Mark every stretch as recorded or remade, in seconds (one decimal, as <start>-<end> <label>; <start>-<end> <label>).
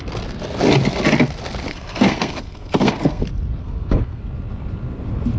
0.0-1.7 recorded; 1.7-3.2 remade; 3.2-3.6 recorded; 3.6-4.2 remade; 4.2-5.4 recorded